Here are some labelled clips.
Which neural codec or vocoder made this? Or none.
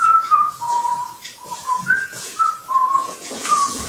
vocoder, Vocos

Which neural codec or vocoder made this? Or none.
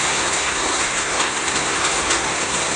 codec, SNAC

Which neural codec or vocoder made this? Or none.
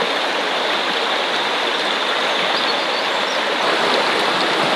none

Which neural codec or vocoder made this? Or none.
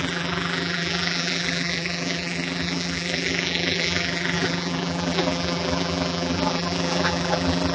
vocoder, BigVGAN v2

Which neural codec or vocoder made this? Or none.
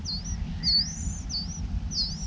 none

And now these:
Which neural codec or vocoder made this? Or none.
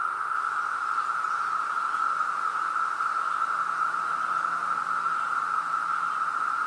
none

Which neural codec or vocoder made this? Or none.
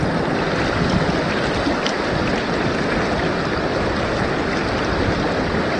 none